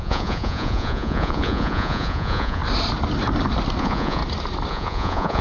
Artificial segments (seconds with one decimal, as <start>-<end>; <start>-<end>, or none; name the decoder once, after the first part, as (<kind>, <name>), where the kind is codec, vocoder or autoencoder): 0.0-2.6 (vocoder, Vocos); 3.8-4.2; 4.7-5.4